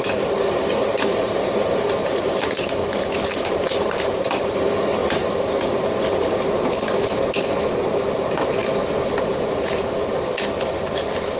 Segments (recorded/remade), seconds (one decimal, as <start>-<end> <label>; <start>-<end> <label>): 0.0-2.8 remade; 2.8-3.4 recorded; 3.4-8.6 remade; 8.6-9.1 recorded; 9.1-10.3 remade; 10.3-11.4 recorded